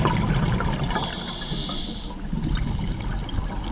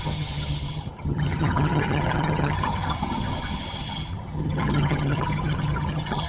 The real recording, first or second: first